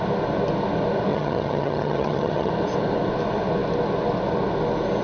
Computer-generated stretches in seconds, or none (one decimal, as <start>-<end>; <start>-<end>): 1.1-2.5

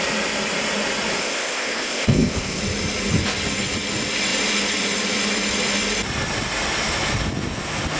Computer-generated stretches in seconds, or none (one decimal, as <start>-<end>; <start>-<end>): 1.2-2.6

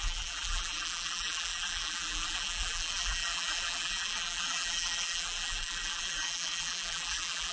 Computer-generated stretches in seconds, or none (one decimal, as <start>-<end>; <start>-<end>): 0.0-7.5